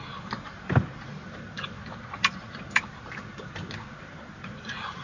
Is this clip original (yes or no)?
no